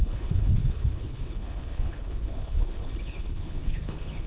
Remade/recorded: remade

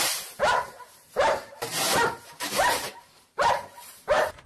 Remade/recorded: remade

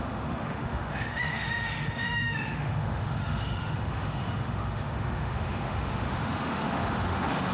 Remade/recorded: remade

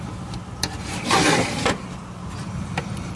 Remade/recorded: recorded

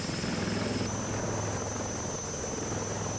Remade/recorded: recorded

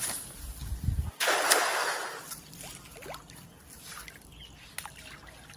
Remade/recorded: recorded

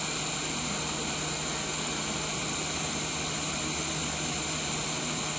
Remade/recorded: recorded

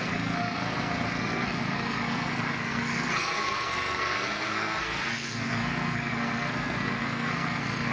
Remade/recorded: remade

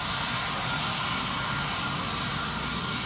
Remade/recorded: recorded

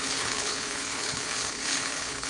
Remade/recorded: remade